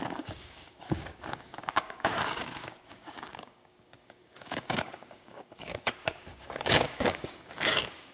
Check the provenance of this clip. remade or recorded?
remade